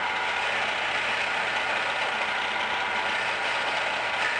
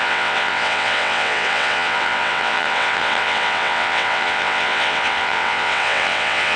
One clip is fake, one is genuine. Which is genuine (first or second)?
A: first